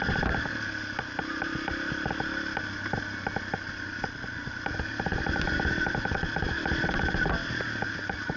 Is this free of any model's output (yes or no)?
yes